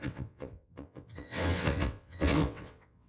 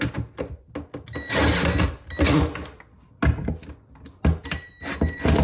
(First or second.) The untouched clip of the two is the second